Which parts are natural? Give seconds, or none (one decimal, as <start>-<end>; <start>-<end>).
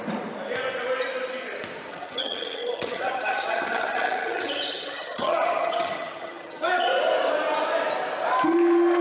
0.0-1.9; 6.9-9.0